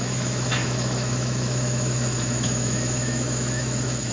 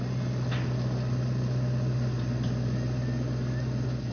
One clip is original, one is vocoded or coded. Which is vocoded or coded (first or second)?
first